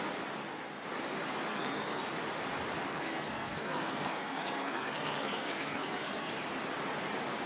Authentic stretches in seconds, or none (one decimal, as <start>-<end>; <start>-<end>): 0.0-1.5; 2.0-2.9; 6.3-7.5